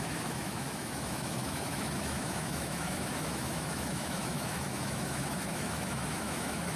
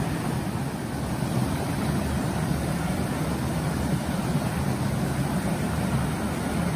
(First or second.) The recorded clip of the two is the second